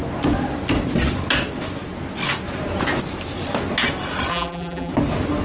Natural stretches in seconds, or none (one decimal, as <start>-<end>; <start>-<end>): 0.0-4.3; 4.9-5.4